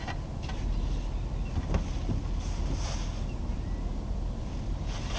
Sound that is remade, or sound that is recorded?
recorded